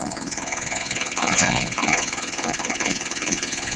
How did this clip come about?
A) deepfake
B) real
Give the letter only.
A